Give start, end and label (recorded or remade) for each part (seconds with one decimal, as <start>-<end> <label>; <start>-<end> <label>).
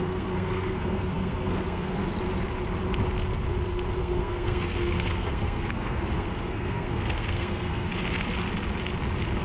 0.0-2.0 remade; 2.0-4.0 recorded; 4.0-7.9 remade; 7.9-9.4 recorded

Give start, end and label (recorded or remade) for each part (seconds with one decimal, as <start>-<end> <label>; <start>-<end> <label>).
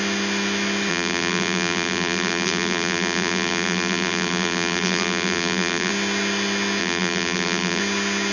0.0-0.9 recorded; 0.9-5.9 remade; 5.9-6.8 recorded; 6.8-7.8 remade; 7.8-8.3 recorded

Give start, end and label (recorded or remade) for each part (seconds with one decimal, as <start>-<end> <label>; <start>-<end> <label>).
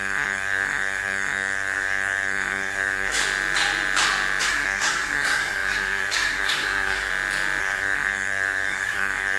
0.0-3.2 remade; 3.2-4.4 recorded; 4.4-7.1 remade; 7.1-7.6 recorded; 7.6-9.4 remade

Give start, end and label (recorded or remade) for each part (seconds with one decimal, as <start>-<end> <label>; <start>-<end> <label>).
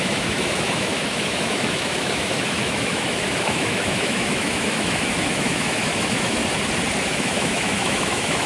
0.0-6.4 remade; 6.4-7.0 recorded; 7.0-8.5 remade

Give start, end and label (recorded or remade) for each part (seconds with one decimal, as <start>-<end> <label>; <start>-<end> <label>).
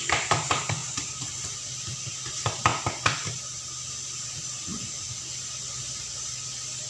0.0-2.7 remade; 2.7-3.9 recorded; 3.9-6.9 remade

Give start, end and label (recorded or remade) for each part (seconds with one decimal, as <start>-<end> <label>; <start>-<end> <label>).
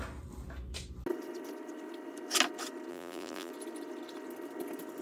0.0-2.9 recorded; 2.9-3.5 remade; 3.5-5.0 recorded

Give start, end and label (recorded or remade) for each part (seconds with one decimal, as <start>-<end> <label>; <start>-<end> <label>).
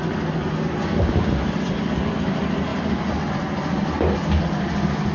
0.0-0.8 recorded; 0.8-1.3 remade; 1.3-5.1 recorded